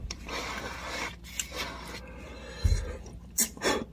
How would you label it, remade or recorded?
recorded